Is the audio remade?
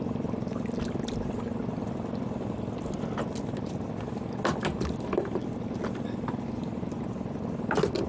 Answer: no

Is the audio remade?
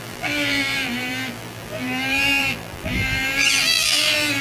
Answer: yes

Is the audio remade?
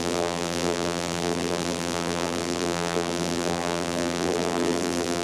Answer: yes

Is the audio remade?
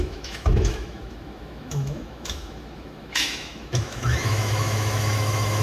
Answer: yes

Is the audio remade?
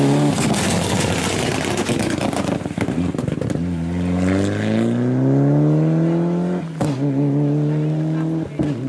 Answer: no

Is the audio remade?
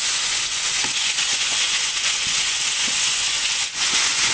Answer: yes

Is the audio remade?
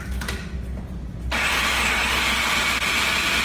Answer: no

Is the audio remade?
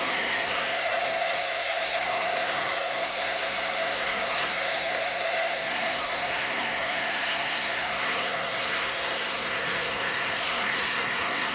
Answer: yes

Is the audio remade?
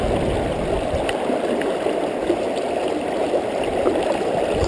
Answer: no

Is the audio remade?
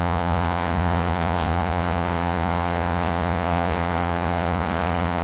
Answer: yes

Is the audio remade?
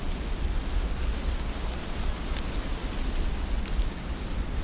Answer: no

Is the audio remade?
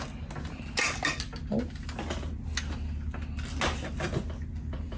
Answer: no